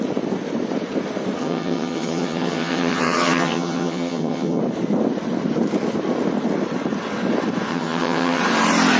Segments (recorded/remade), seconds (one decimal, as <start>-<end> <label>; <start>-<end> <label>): 0.0-1.4 recorded; 1.4-4.6 remade; 4.6-7.7 recorded; 7.7-8.4 remade; 8.4-9.0 recorded